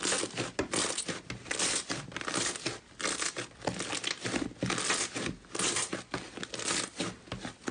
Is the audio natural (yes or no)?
yes